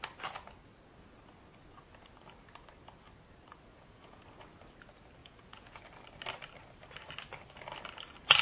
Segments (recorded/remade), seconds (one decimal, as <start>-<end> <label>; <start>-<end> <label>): 0.0-3.7 recorded; 3.7-4.2 remade; 4.2-5.2 recorded; 5.2-5.8 remade; 5.8-8.4 recorded